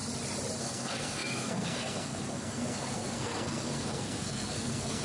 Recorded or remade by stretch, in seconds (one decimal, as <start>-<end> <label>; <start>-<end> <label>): 0.0-0.6 recorded; 0.6-5.0 remade